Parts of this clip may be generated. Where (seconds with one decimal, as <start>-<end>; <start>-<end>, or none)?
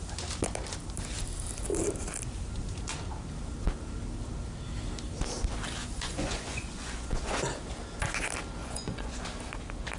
5.8-7.4; 8.6-9.2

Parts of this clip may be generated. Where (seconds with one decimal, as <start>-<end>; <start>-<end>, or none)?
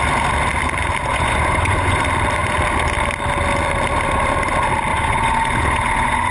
1.1-2.0; 4.9-6.3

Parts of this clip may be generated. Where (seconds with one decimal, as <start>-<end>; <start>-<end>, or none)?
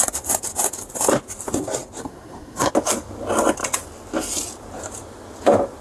2.0-2.7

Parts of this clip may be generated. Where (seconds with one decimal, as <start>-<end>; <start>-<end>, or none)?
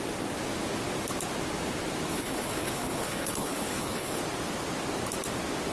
2.1-4.2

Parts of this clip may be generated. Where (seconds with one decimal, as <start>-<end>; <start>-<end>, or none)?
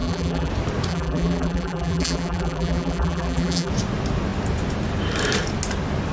0.0-0.5; 0.9-3.7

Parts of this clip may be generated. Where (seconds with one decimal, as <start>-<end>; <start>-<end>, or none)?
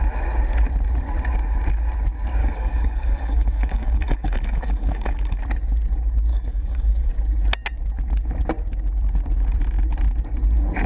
2.4-5.4; 6.3-7.1